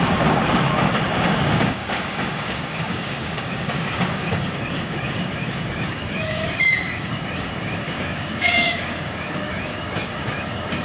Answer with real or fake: fake